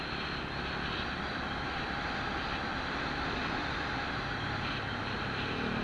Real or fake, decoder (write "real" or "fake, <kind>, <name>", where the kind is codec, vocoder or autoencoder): real